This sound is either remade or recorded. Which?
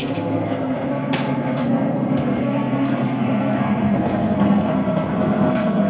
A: remade